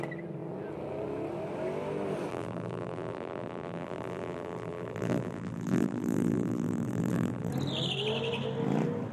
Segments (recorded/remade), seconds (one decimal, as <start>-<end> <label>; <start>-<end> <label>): 0.0-2.3 recorded; 2.3-7.5 remade; 7.5-9.1 recorded